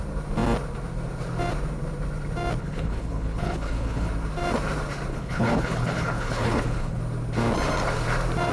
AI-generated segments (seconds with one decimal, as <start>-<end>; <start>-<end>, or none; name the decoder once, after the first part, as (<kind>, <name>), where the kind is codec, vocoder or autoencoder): 2.6-4.1 (codec, HILCodec); 5.1-7.0

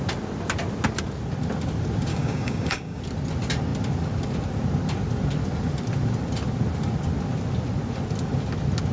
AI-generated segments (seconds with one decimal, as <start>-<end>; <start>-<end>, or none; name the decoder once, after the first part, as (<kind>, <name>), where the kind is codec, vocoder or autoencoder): 2.1-3.0 (codec, DAC)

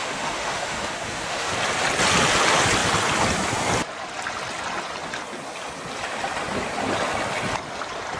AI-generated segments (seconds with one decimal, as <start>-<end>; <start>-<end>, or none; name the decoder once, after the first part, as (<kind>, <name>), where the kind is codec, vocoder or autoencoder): 0.0-1.5 (autoencoder, DAC-VAE)

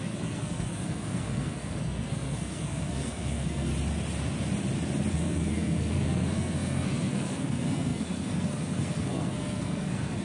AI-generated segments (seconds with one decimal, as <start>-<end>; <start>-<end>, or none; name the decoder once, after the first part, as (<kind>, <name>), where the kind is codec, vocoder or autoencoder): 0.0-3.7 (codec, SNAC); 5.1-10.2

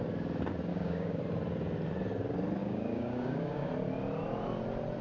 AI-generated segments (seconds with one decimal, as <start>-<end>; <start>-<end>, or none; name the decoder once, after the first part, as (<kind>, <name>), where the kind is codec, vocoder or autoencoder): 0.7-1.2 (codec, DAC); 2.6-3.7

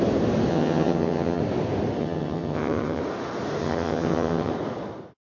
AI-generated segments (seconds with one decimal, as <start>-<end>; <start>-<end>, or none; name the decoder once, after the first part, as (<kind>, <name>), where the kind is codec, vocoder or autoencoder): 0.5-1.4 (vocoder, HiFi-GAN); 2.0-3.0; 3.6-4.5

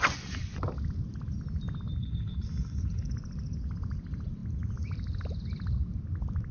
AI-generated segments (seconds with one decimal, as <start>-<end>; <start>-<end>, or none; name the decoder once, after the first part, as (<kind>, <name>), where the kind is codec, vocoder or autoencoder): 2.0-3.1 (codec, HILCodec)

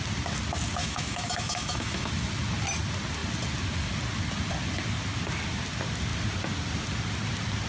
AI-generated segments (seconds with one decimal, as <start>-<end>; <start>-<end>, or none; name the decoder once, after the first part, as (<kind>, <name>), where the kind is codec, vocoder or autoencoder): 0.8-2.1 (autoencoder, DAC-VAE)